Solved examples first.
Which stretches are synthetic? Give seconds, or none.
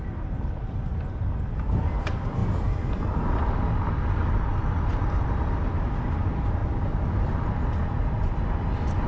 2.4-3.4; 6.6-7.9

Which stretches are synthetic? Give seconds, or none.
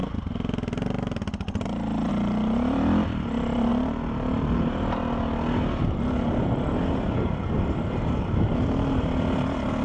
2.1-3.7; 8.2-9.8